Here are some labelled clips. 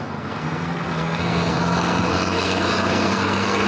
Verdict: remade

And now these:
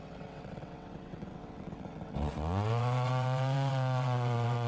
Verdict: remade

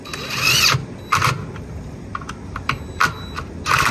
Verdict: recorded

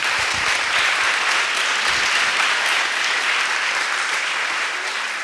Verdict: recorded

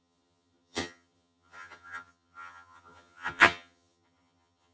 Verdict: remade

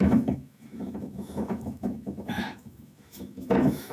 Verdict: remade